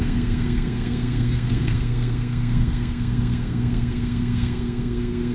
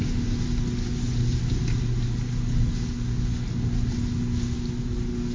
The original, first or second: second